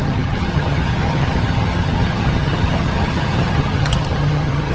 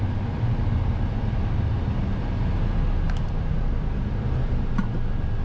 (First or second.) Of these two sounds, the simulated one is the first